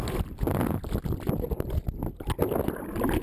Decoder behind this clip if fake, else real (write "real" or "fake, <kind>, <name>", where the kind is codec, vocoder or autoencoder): real